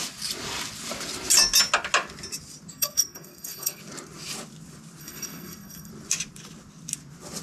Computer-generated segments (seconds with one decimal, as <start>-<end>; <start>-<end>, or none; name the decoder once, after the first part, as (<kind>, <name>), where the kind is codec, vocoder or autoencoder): 2.7-3.8 (codec, SNAC); 5.0-5.9